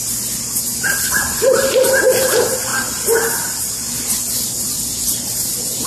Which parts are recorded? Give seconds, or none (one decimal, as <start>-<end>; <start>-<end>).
0.0-5.9